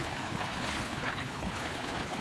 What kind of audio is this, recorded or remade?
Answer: remade